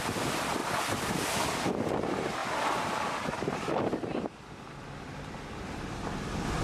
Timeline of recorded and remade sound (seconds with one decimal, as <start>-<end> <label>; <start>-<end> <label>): 0.0-0.6 recorded; 0.6-1.3 remade; 1.3-2.4 recorded; 2.4-6.6 remade